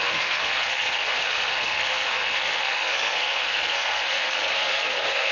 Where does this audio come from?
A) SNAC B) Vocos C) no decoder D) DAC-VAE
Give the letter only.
A